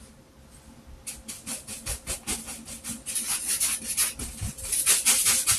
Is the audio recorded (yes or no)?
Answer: yes